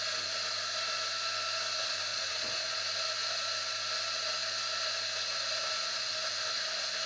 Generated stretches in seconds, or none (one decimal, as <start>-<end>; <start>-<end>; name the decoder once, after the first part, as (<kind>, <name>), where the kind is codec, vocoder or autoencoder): 2.1-2.8 (vocoder, Vocos)